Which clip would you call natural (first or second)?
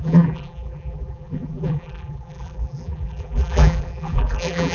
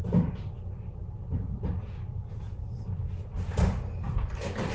second